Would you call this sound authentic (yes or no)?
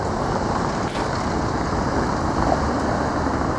yes